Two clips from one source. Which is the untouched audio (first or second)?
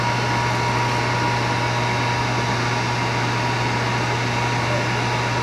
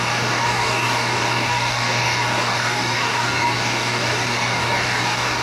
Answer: first